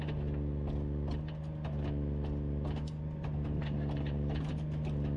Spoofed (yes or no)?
no